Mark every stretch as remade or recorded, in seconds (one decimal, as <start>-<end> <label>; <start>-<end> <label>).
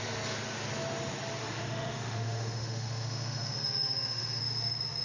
0.0-1.4 recorded; 1.4-4.4 remade; 4.4-5.0 recorded